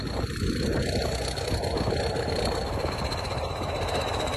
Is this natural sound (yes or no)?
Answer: no